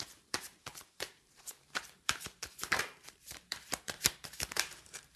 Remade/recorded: remade